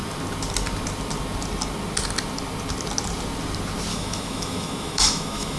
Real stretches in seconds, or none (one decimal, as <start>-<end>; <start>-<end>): 0.0-3.9